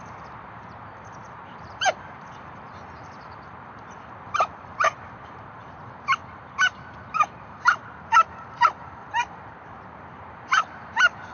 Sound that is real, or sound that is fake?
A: fake